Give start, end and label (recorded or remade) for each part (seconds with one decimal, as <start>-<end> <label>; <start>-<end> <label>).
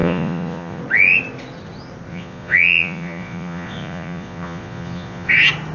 0.0-0.8 remade; 0.8-2.1 recorded; 2.1-5.3 remade; 5.3-5.7 recorded